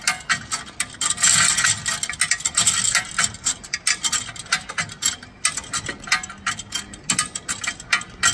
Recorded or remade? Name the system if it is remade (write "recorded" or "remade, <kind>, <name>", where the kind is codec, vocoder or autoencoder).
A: recorded